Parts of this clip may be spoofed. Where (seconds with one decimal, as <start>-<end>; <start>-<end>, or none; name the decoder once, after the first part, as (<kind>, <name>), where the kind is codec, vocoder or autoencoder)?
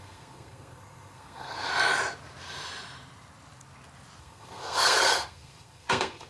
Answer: 0.0-1.7 (codec, SNAC); 4.2-6.3